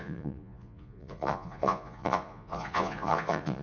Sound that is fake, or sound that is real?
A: fake